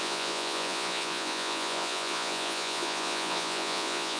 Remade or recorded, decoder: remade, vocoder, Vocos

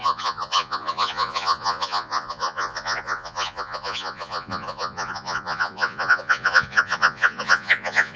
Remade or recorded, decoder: remade, vocoder, Vocos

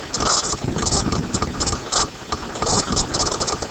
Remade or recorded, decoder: recorded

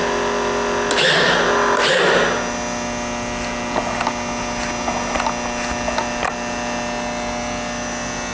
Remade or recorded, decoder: recorded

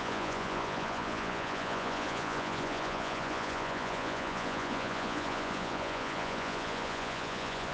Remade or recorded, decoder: remade, vocoder, Vocos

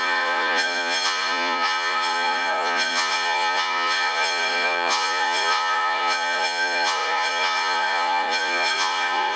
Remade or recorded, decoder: remade, vocoder, Vocos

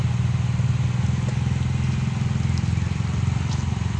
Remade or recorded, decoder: recorded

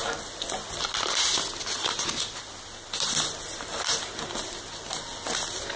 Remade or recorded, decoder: recorded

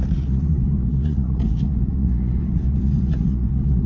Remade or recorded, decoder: remade, vocoder, Vocos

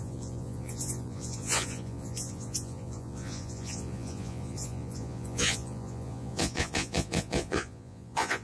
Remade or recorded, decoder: remade, vocoder, Vocos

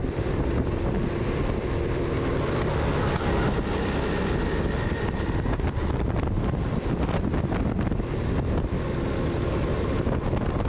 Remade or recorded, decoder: recorded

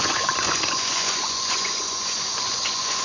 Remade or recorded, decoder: remade, vocoder, Vocos